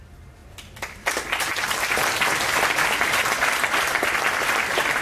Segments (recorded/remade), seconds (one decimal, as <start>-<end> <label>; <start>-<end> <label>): 0.0-5.0 recorded